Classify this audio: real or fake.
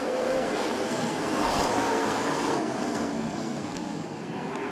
fake